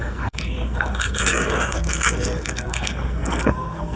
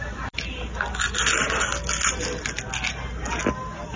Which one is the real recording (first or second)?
second